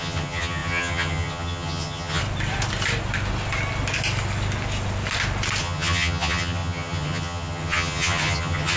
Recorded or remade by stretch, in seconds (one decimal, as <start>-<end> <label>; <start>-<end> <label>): 0.0-2.2 remade; 2.2-5.6 recorded; 5.6-8.8 remade